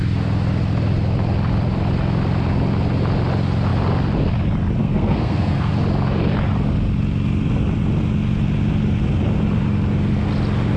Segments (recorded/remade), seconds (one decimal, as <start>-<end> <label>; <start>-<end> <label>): 0.0-4.8 recorded; 4.8-5.7 remade; 5.7-10.8 recorded